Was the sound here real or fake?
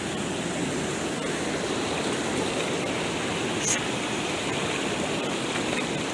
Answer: real